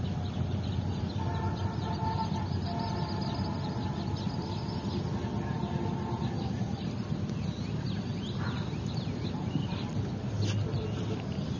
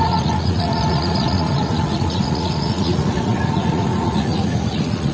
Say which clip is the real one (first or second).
first